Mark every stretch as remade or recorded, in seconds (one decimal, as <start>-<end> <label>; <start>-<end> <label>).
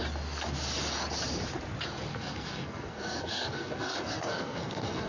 0.0-2.1 recorded; 2.1-5.1 remade